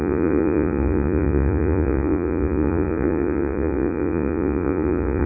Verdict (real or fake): fake